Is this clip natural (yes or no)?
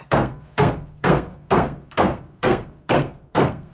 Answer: no